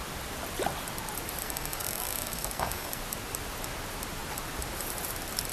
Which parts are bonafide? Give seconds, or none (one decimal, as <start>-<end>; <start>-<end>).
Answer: 0.0-1.4; 3.0-5.5